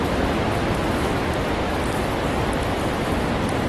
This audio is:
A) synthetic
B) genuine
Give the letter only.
B